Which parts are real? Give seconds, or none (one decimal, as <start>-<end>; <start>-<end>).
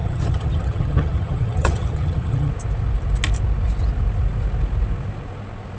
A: 2.5-5.8